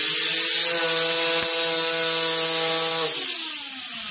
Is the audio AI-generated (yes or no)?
no